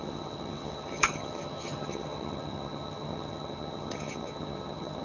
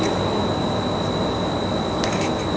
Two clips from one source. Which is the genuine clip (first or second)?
second